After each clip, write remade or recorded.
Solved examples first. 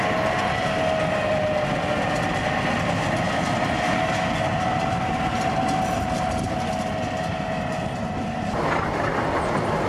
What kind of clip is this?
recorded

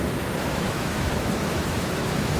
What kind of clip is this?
remade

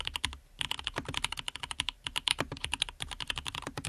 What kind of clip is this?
recorded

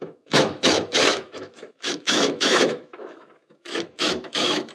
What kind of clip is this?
remade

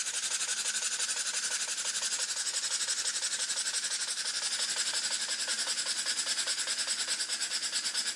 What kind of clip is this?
recorded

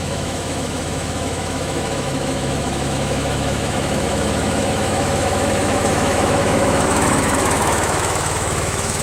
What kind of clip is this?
remade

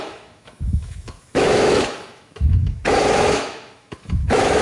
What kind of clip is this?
remade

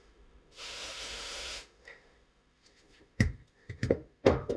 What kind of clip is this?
remade